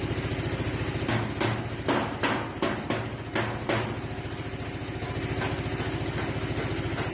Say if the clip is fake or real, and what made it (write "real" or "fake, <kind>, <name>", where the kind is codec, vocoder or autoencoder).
real